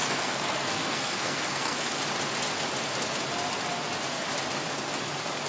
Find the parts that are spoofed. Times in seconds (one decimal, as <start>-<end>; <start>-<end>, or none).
0.0-2.0